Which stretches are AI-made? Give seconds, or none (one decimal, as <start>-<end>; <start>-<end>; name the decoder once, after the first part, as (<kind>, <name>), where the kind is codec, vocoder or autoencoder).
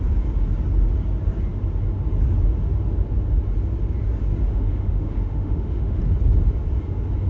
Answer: 4.5-6.0 (autoencoder, DAC-VAE)